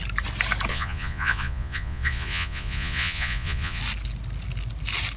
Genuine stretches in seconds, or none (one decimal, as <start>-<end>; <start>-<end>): 0.0-0.7; 3.8-5.2